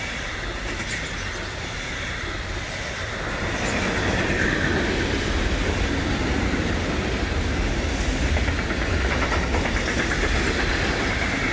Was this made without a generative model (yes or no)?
yes